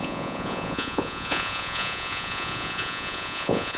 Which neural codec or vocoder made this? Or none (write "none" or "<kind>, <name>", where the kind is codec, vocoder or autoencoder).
vocoder, Vocos